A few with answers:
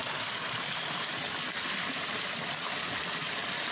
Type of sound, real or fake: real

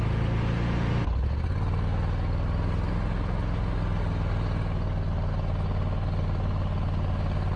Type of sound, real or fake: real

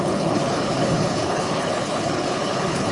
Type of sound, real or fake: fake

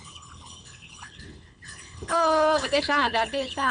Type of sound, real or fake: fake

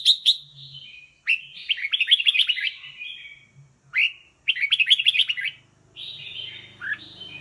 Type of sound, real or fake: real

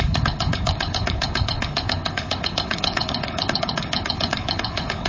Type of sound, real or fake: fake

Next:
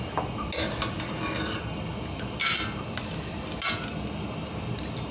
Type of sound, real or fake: real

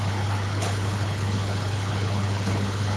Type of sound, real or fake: fake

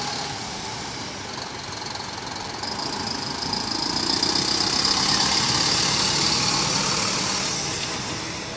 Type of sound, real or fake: real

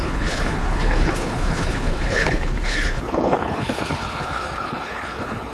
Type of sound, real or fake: fake